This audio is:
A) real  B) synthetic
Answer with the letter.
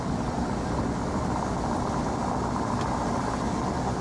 A